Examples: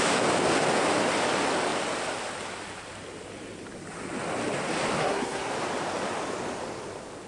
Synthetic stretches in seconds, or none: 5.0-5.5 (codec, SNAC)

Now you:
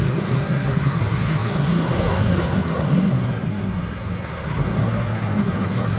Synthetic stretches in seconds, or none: 0.0-6.0 (codec, SNAC)

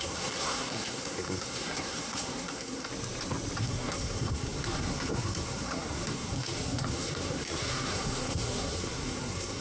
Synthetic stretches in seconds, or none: 0.0-2.9 (codec, SNAC); 3.6-9.6

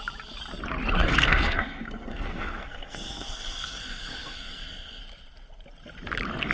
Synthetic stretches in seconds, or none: 1.1-5.0 (codec, SNAC)

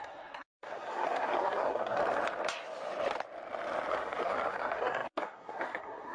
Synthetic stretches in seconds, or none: 0.0-2.0 (codec, SNAC); 3.9-6.1

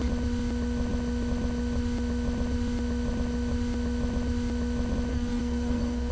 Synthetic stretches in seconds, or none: 5.1-6.1 (codec, SNAC)

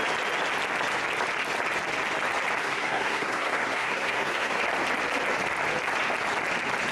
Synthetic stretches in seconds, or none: 2.6-4.6 (codec, SNAC)

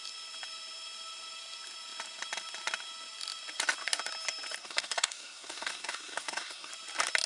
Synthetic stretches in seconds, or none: 4.6-6.7 (codec, SNAC)